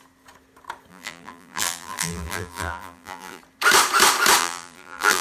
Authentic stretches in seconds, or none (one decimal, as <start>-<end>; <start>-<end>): 0.0-0.9; 3.4-4.4